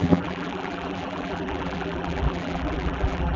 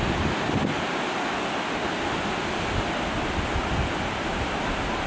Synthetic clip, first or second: first